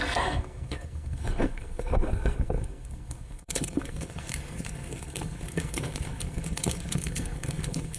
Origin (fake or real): fake